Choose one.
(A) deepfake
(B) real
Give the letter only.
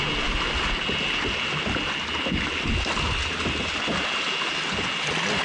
B